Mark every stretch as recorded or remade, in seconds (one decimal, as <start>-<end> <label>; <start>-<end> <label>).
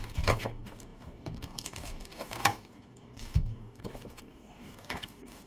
0.0-5.5 remade